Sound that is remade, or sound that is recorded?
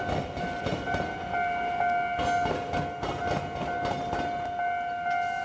recorded